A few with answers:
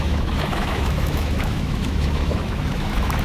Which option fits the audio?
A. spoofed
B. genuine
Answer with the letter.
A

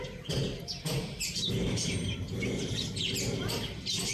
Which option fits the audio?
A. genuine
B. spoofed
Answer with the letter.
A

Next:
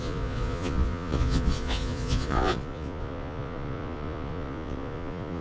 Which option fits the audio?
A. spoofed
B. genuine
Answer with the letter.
A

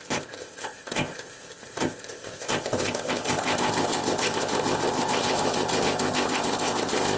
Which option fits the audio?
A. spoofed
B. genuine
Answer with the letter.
A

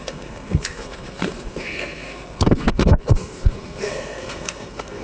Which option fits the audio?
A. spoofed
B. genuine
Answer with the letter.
A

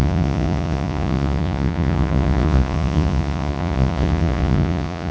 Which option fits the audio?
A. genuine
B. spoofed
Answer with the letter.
B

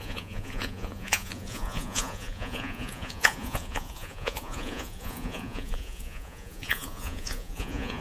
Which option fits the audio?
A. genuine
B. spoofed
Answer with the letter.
B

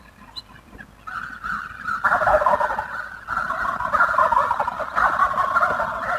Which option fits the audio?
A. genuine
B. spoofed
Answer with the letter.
A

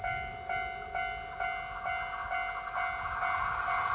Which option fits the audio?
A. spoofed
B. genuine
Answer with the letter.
B